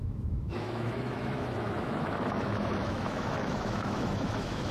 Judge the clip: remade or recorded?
remade